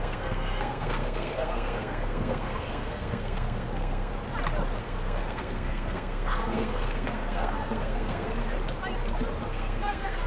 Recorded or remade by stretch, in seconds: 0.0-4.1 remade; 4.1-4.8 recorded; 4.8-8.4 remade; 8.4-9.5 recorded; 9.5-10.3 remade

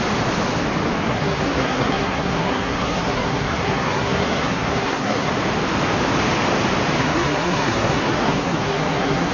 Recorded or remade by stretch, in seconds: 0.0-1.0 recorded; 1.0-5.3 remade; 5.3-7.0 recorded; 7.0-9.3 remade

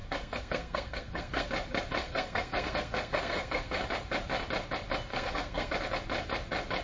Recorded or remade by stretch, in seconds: 0.0-1.5 remade; 1.5-2.0 recorded; 2.0-3.8 remade; 3.8-5.1 recorded; 5.1-5.7 remade; 5.7-6.8 recorded

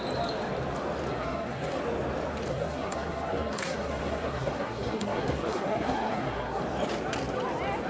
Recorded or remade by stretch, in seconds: 0.0-1.1 recorded; 1.1-1.8 remade; 1.8-2.5 recorded; 2.5-6.6 remade; 6.6-7.9 recorded

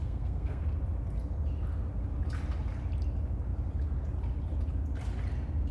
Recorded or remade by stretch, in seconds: 0.0-0.8 remade; 0.8-5.7 recorded